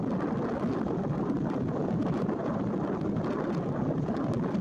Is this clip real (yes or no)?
yes